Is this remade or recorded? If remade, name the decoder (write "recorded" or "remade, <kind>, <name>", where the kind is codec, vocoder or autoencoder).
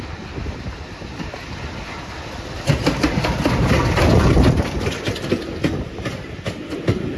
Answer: recorded